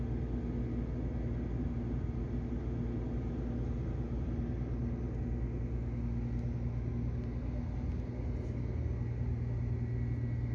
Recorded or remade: recorded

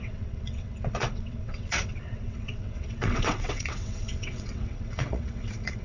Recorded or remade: remade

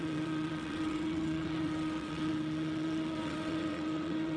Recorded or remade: remade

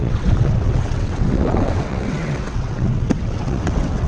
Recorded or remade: remade